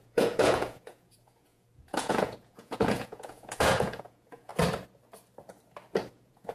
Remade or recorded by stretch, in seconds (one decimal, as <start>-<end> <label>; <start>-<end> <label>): 0.0-4.5 remade; 4.5-6.1 recorded; 6.1-6.5 remade